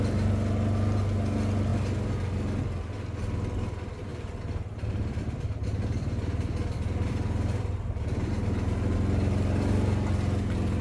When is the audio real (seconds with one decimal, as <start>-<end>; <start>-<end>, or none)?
0.0-4.1; 8.3-10.8